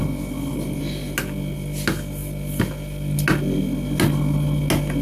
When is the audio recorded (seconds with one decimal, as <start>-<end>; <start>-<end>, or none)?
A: 0.0-5.0